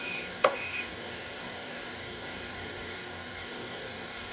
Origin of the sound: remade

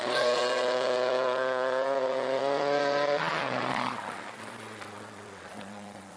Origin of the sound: remade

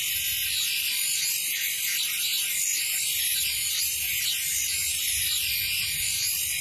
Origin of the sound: recorded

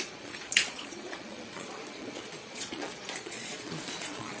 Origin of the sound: remade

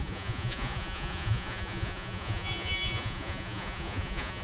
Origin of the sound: remade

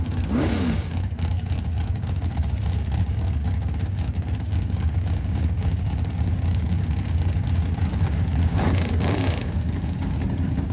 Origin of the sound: remade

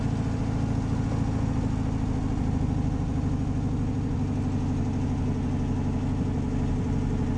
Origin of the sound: recorded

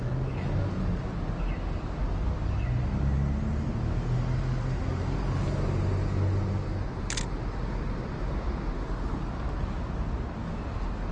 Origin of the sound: recorded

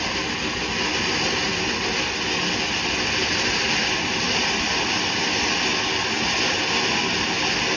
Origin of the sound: recorded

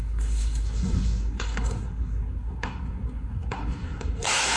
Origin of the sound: remade